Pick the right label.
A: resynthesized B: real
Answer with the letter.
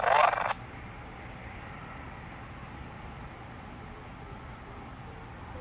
B